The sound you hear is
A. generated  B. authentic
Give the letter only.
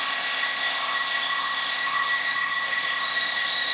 A